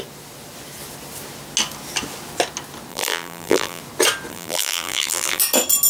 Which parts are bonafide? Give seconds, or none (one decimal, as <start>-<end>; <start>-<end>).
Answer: 0.0-2.9; 3.8-4.3; 5.4-5.9